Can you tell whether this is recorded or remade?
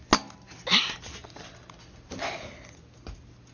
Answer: recorded